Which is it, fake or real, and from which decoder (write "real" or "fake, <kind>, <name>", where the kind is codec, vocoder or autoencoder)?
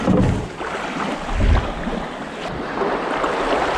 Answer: real